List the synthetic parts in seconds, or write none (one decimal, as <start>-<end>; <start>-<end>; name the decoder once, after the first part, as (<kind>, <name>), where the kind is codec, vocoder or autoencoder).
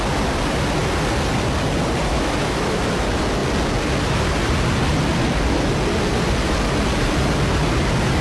2.1-2.8 (autoencoder, DAC-VAE)